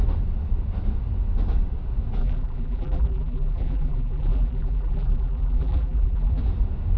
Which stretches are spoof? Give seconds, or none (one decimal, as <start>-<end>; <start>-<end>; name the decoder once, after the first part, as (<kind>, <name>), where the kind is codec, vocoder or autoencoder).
2.2-6.4 (vocoder, BigVGAN v2)